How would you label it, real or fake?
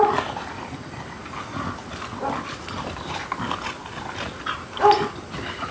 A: real